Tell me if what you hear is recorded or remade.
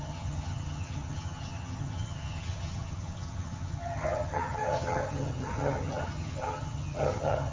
remade